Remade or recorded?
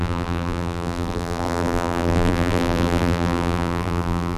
remade